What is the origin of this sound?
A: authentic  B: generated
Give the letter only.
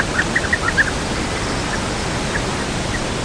A